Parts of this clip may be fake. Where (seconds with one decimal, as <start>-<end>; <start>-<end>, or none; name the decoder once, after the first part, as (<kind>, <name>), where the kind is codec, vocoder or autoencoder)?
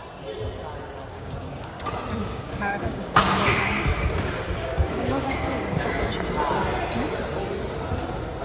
1.1-1.8 (codec, DAC); 2.2-5.9